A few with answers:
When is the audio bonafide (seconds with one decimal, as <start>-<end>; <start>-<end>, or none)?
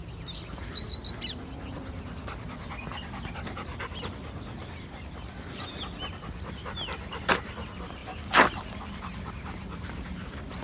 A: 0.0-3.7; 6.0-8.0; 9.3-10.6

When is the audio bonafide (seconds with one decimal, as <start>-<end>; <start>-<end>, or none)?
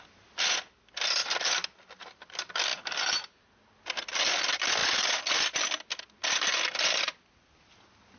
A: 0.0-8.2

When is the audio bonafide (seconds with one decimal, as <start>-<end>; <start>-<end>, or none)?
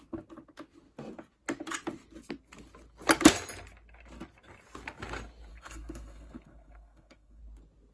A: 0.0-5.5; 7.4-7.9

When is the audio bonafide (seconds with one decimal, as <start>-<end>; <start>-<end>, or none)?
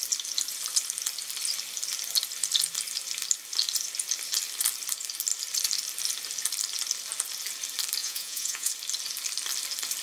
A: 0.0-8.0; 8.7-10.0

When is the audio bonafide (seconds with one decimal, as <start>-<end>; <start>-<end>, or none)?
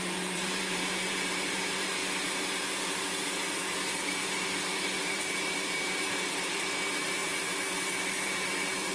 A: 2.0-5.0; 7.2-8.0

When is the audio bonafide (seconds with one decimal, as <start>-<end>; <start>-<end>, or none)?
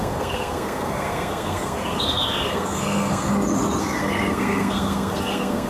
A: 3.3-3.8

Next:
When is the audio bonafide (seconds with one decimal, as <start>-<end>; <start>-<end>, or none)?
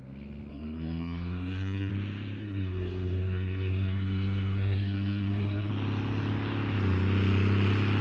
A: 0.0-0.5; 1.9-2.4; 5.7-8.0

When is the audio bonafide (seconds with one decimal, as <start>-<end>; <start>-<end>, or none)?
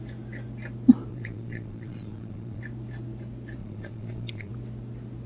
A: 0.0-1.1; 2.6-3.6; 4.5-5.3